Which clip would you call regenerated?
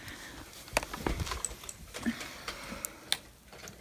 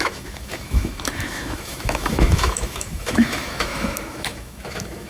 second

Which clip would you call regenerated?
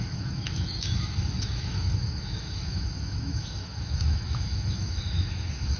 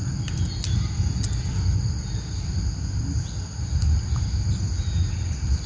first